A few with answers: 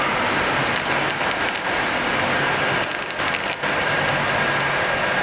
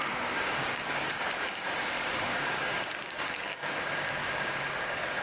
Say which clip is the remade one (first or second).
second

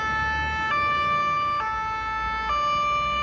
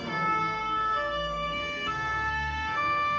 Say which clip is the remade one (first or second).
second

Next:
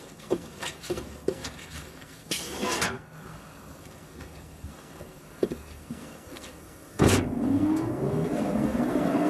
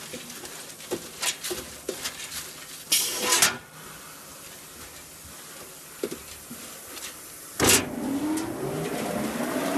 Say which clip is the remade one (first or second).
first